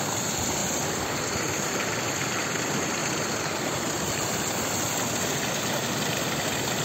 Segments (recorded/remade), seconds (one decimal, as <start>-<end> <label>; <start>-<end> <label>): 0.0-6.8 recorded